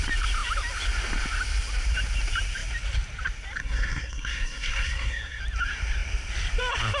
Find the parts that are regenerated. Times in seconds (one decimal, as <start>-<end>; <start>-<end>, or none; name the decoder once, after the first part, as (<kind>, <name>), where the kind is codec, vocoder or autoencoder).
3.6-5.4 (codec, SNAC)